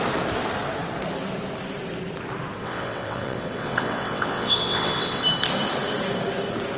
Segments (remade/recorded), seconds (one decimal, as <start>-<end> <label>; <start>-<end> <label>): 0.0-2.6 recorded; 2.6-5.2 remade; 5.2-6.8 recorded